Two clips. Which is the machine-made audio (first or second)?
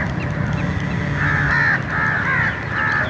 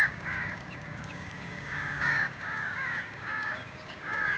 second